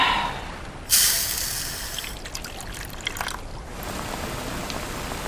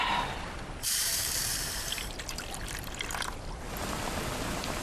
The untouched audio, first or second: first